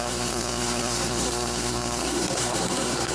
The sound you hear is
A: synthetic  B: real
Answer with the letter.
A